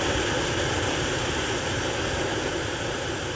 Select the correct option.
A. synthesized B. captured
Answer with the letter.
B